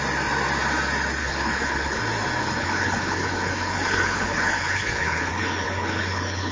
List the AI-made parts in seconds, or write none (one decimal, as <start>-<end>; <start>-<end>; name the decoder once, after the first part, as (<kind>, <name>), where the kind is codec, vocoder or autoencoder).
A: 1.2-2.0 (codec, HILCodec); 2.4-6.5